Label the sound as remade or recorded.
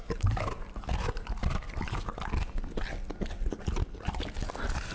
recorded